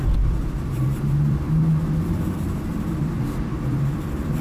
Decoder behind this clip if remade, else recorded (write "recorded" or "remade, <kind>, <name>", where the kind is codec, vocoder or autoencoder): remade, vocoder, BigVGAN v2